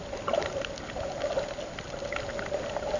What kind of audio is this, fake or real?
real